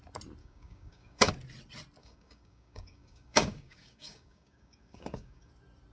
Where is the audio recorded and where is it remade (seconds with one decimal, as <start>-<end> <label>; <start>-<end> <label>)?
0.0-0.4 recorded; 0.4-1.3 remade; 1.3-2.0 recorded; 2.0-5.5 remade; 5.5-5.9 recorded